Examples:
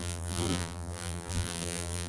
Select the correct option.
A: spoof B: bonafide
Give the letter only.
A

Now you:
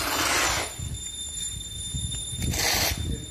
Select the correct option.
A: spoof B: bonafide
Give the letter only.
B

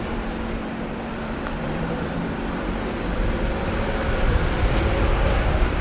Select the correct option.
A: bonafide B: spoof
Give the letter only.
B